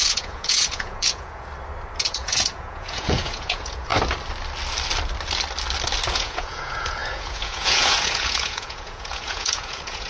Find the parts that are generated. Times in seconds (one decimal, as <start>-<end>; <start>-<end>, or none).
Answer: 0.0-1.5; 2.0-3.9; 6.1-10.1